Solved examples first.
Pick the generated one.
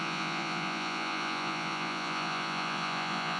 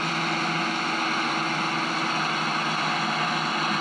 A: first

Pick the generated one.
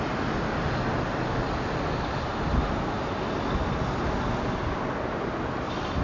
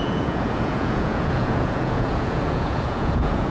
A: second